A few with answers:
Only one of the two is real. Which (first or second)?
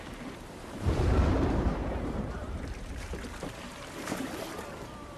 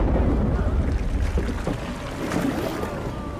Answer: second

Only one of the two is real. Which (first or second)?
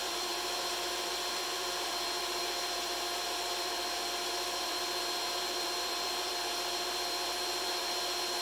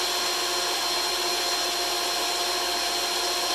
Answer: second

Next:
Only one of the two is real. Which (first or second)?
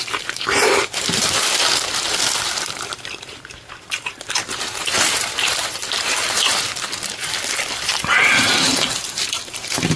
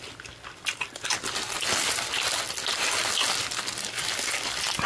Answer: second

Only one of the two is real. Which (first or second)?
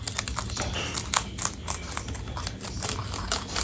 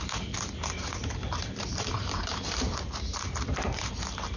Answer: first